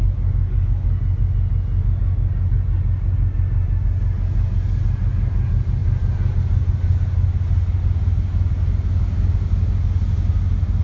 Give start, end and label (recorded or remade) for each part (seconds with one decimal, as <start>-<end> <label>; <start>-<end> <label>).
0.0-10.8 recorded